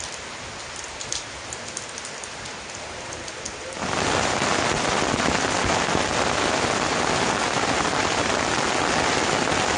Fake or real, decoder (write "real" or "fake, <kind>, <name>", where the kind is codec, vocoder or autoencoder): real